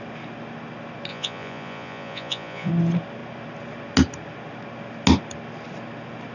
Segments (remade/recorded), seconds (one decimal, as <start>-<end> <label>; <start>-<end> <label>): 0.0-1.1 recorded; 1.1-2.7 remade; 2.7-6.3 recorded